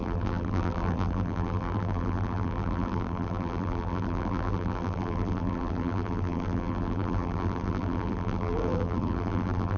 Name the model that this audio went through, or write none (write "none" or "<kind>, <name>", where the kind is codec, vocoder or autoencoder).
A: vocoder, BigVGAN v2